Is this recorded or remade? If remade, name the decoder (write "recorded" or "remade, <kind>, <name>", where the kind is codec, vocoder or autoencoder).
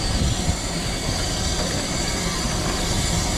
recorded